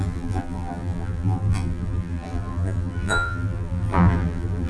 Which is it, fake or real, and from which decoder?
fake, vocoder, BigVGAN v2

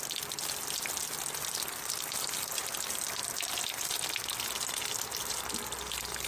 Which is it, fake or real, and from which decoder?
real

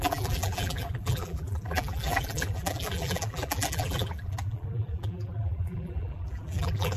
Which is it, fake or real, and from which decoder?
fake, vocoder, BigVGAN v2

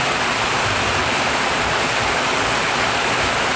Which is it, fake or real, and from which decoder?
real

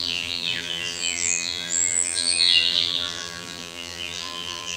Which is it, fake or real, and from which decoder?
fake, vocoder, BigVGAN v2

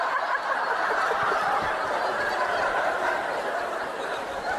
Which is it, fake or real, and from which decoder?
real